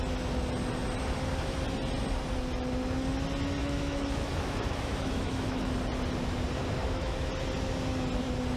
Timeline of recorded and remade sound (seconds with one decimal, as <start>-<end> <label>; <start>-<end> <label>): 0.0-3.6 recorded; 3.6-5.7 remade; 5.7-6.8 recorded; 6.8-7.3 remade; 7.3-8.6 recorded